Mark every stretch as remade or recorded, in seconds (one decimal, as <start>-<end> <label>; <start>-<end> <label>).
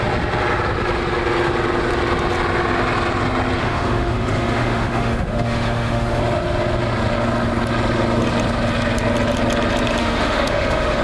0.0-3.6 recorded; 3.6-6.2 remade; 6.2-10.0 recorded; 10.0-11.0 remade